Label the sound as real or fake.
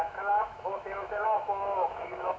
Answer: fake